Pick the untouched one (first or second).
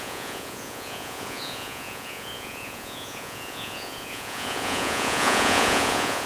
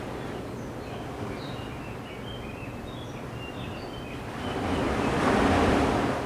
second